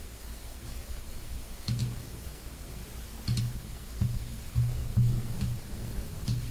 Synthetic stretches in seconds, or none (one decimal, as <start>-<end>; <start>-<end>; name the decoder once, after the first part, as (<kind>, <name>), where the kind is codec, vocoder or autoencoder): 0.0-2.8 (codec, SNAC); 3.4-6.5